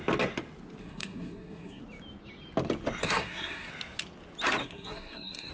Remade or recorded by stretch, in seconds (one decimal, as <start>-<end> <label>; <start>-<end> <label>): 0.0-0.8 recorded; 0.8-1.8 remade; 1.8-3.0 recorded; 3.0-3.7 remade; 3.7-4.6 recorded; 4.6-5.5 remade